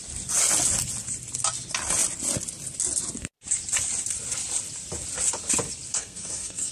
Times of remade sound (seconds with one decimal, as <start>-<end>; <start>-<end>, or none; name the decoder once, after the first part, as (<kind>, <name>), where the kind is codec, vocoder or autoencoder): 5.9-6.7 (codec, SNAC)